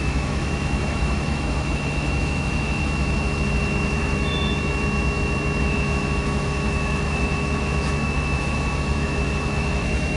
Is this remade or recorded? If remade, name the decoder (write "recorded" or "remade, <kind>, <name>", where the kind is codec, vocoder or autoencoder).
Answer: remade, autoencoder, DAC-VAE